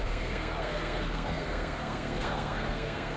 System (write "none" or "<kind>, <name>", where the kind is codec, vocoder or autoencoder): codec, SNAC